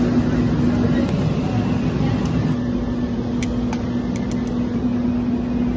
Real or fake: real